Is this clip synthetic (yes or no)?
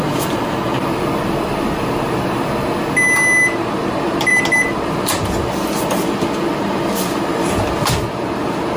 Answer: no